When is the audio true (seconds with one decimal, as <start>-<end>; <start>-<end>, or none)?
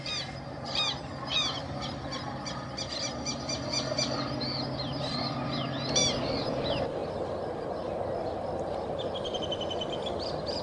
7.0-8.7